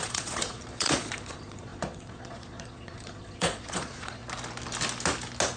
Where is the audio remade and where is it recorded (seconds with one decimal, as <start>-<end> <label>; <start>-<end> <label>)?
0.0-4.2 remade; 4.2-5.6 recorded